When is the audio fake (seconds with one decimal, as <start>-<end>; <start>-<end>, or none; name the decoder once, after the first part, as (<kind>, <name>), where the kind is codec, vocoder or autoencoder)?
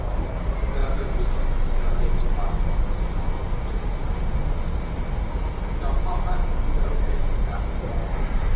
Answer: none